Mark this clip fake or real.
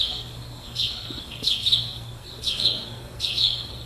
fake